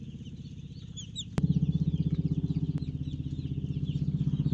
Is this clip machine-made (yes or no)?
no